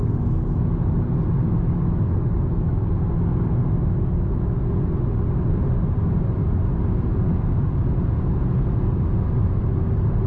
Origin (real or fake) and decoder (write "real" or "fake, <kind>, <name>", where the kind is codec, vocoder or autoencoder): real